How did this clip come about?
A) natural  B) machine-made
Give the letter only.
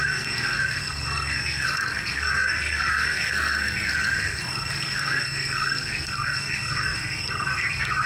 B